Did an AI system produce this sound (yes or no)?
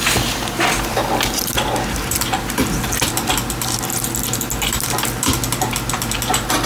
no